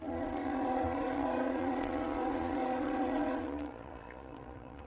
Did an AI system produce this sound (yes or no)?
yes